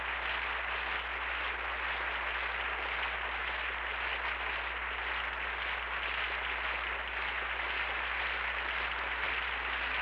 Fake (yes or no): no